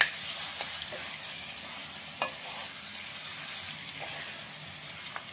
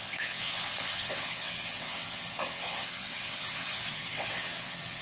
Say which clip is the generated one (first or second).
second